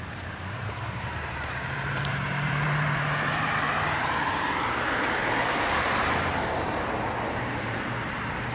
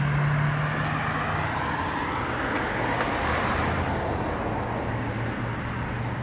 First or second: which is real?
second